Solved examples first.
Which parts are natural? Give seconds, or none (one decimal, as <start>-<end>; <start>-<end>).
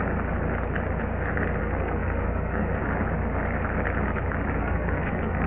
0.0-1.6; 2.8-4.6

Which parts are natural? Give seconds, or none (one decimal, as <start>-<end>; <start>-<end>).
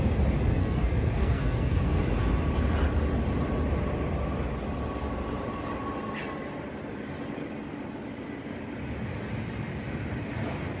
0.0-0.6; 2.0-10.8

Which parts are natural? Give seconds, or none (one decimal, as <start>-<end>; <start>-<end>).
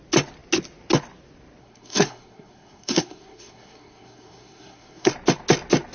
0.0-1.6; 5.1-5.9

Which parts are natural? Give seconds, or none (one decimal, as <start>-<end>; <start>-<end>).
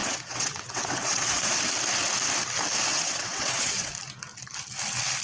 1.5-2.9; 3.9-5.2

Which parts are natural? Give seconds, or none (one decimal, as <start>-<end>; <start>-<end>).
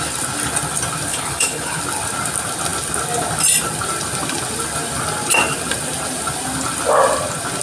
0.0-1.1; 1.8-7.6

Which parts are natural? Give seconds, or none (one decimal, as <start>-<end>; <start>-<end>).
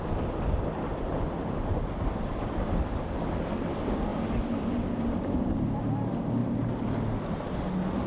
0.0-0.9; 2.3-4.1; 5.8-8.1